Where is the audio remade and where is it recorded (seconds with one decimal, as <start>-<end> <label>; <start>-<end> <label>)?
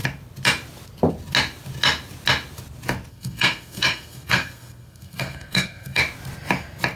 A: 0.0-3.1 recorded; 3.1-6.0 remade; 6.0-7.0 recorded